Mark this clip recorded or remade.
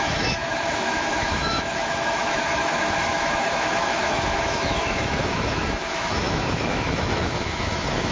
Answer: remade